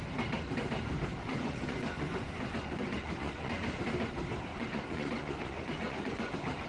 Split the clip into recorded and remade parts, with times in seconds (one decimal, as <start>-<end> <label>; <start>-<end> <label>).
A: 0.0-1.3 recorded; 1.3-3.8 remade; 3.8-4.5 recorded; 4.5-6.3 remade; 6.3-6.7 recorded